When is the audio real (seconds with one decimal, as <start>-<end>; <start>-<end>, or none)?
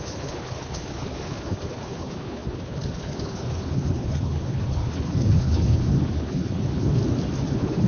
7.0-7.5